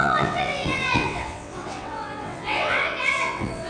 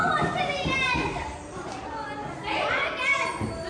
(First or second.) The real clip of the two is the second